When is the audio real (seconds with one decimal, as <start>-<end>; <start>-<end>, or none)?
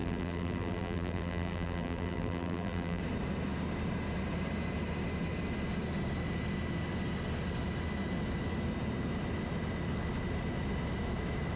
3.0-11.6